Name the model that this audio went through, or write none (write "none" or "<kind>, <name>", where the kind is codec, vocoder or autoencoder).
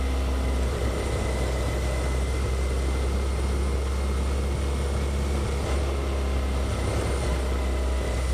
none